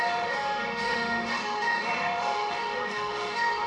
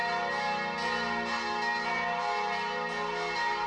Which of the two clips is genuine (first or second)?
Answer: second